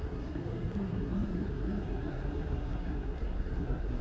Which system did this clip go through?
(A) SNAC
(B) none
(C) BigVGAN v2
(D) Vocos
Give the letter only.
A